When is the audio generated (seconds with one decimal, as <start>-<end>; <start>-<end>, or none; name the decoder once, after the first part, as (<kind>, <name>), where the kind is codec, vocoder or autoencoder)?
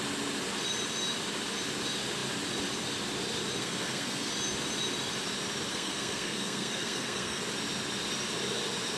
3.6-4.3 (codec, SNAC); 5.7-7.4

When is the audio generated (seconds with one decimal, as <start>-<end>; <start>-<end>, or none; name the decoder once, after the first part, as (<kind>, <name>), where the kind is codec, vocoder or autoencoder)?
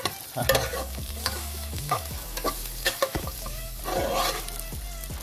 0.7-3.8 (codec, DAC)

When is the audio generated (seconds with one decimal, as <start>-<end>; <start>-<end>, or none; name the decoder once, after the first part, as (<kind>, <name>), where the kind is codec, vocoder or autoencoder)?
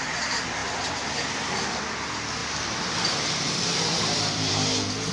0.6-1.8 (vocoder, BigVGAN v2); 2.4-4.5